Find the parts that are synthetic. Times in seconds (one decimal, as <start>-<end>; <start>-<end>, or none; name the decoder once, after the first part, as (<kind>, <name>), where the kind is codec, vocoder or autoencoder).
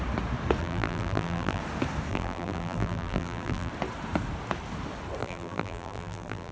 0.6-1.6 (vocoder, BigVGAN v2); 2.1-3.7; 5.2-6.5